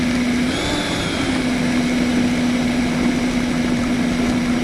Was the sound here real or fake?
real